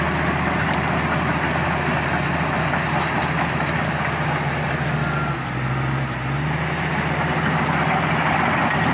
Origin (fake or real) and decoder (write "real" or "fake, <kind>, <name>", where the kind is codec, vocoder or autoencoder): real